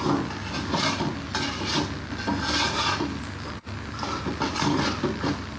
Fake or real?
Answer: real